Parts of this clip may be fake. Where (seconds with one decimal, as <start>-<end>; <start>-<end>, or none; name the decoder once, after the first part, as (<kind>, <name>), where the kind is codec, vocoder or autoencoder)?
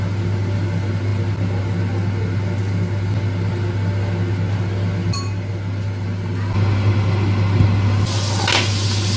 none